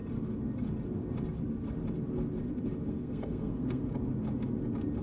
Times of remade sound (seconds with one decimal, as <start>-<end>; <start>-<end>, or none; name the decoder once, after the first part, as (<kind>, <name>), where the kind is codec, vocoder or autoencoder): 2.9-3.8 (codec, SNAC)